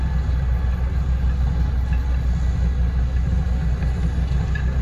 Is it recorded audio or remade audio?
recorded